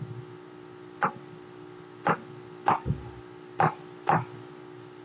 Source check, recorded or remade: recorded